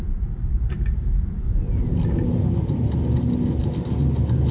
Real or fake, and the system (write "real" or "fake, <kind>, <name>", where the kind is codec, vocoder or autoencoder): real